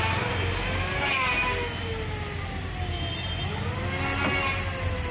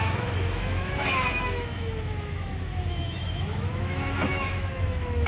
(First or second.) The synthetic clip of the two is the second